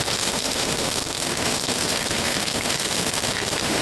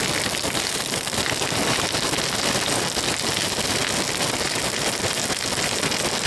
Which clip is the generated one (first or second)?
first